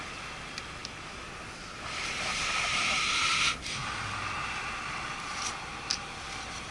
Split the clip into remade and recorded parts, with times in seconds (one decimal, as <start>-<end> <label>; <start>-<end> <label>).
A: 0.0-6.7 recorded